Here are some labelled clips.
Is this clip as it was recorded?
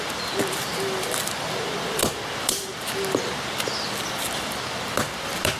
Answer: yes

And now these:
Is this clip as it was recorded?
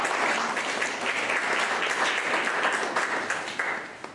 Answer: yes